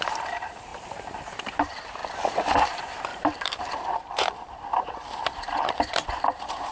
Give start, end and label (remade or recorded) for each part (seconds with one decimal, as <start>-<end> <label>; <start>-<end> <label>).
0.0-0.7 remade; 0.7-1.3 recorded; 1.3-2.0 remade; 2.0-2.6 recorded; 2.6-6.7 remade